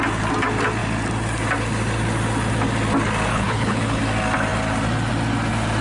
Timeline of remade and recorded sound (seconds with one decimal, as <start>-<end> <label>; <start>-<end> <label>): 0.0-3.3 recorded; 3.3-4.0 remade; 4.0-5.8 recorded